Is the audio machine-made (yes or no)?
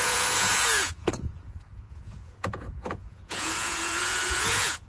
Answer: yes